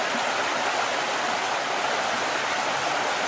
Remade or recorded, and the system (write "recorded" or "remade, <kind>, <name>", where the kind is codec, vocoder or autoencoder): recorded